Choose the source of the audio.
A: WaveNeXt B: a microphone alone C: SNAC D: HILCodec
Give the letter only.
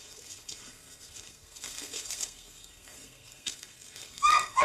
C